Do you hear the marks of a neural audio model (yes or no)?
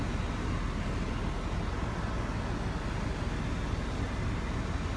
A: no